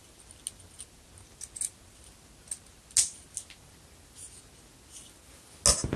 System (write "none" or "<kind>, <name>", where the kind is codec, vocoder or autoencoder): none